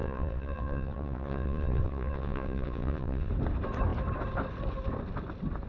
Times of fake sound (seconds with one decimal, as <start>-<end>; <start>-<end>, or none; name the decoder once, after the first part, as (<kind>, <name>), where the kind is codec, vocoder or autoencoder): 0.0-3.3 (vocoder, WaveNeXt)